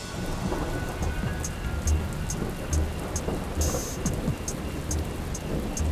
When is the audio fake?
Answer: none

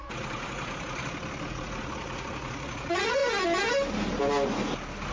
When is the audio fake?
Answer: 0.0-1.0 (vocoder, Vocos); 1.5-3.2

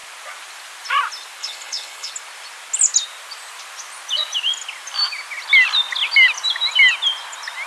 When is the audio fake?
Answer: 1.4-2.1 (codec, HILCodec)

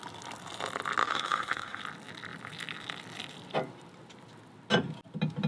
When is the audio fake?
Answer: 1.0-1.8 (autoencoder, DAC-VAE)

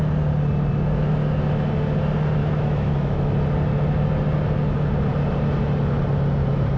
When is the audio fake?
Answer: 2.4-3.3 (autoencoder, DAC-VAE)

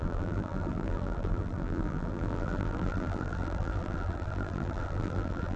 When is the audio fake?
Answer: 0.0-5.6 (vocoder, BigVGAN v2)

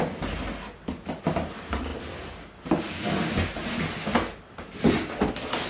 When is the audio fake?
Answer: none

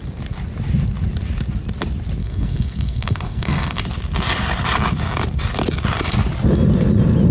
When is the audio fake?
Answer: 2.2-3.8 (codec, SNAC)